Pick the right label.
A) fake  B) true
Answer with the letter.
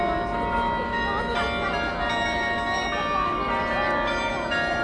B